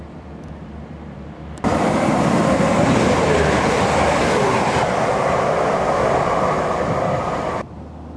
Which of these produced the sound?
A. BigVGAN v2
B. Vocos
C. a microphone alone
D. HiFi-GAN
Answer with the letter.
A